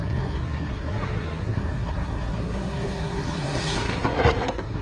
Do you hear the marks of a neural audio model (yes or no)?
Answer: yes